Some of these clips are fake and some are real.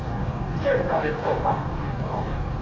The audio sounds fake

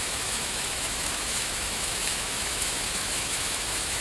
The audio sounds fake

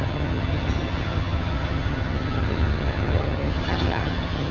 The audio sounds fake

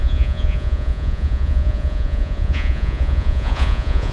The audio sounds fake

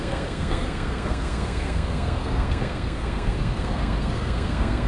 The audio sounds fake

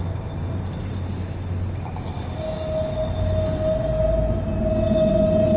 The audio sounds real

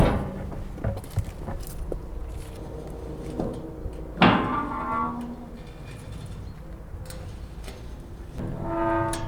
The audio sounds real